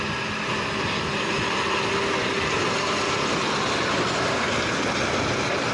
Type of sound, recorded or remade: recorded